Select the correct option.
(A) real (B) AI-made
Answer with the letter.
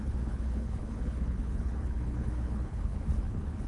B